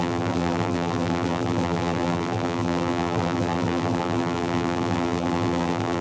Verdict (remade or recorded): remade